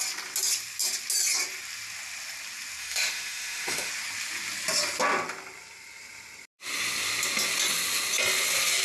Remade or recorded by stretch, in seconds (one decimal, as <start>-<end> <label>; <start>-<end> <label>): 0.0-2.8 recorded; 2.8-3.9 remade; 3.9-8.8 recorded